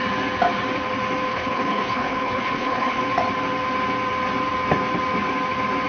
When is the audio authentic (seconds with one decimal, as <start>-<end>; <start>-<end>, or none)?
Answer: 0.0-1.3; 3.0-5.9